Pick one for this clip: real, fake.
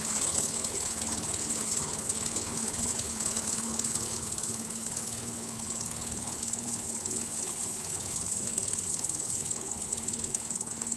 fake